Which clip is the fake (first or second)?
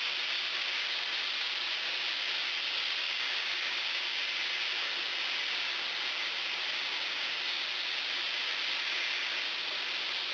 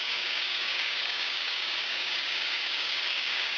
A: second